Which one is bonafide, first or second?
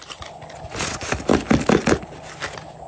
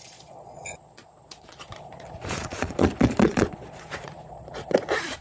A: first